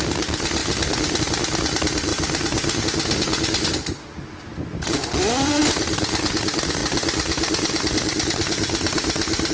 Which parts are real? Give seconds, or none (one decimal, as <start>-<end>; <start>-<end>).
0.0-0.6; 1.2-2.1; 2.8-6.8